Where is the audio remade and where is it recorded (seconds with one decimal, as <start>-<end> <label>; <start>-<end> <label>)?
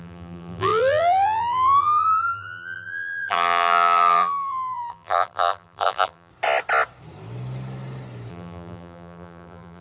0.0-6.3 remade; 6.3-8.3 recorded; 8.3-9.8 remade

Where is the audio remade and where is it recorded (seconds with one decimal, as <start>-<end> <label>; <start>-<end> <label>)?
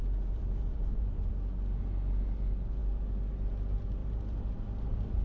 0.0-1.3 remade; 1.3-4.0 recorded; 4.0-5.2 remade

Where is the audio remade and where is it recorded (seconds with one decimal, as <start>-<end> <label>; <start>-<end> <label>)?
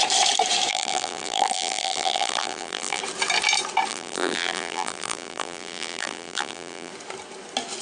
0.0-0.7 recorded; 0.7-3.0 remade; 3.0-3.9 recorded; 3.9-6.9 remade; 6.9-7.8 recorded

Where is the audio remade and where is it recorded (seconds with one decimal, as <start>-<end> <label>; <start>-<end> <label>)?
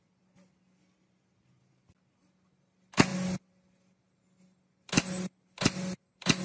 0.0-6.4 recorded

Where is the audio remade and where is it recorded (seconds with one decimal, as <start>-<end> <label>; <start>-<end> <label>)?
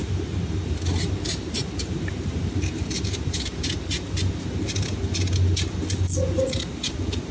0.0-3.6 remade; 3.6-7.3 recorded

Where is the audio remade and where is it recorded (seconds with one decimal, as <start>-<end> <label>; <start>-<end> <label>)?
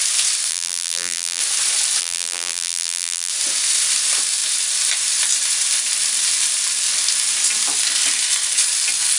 0.0-0.5 recorded; 0.5-1.4 remade; 1.4-2.0 recorded; 2.0-3.3 remade; 3.3-9.2 recorded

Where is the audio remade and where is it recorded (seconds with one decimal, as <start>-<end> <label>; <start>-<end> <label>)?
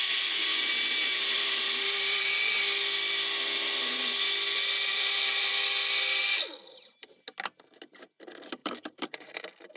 0.0-0.5 recorded; 0.5-2.3 remade; 2.3-4.9 recorded; 4.9-5.5 remade; 5.5-8.6 recorded; 8.6-9.4 remade; 9.4-9.8 recorded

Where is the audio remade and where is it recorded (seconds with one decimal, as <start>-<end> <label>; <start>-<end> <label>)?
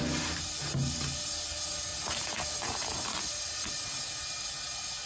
0.0-1.9 recorded; 1.9-3.8 remade; 3.8-5.1 recorded